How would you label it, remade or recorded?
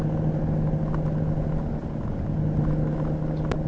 recorded